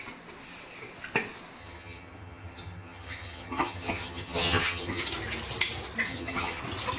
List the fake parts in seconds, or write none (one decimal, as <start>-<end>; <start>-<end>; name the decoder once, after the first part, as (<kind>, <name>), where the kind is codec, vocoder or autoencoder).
1.6-5.0 (vocoder, HiFi-GAN); 6.1-6.6